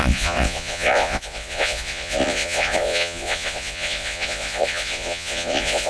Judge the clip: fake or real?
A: fake